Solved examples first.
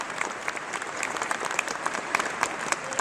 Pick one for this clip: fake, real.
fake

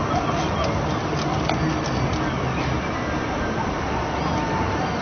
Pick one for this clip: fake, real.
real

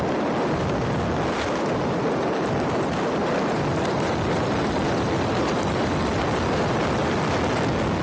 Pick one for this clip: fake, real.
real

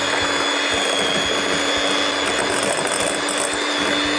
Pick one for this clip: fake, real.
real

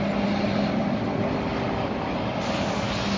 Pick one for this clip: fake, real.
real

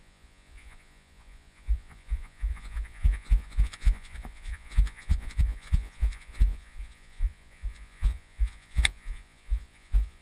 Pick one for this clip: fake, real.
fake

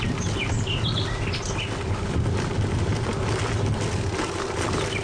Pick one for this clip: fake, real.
real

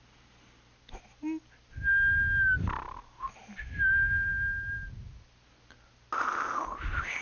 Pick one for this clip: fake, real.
real